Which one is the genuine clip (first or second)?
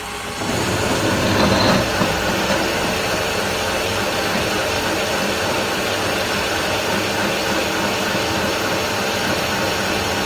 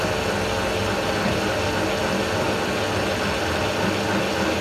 second